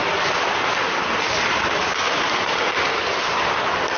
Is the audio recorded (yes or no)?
yes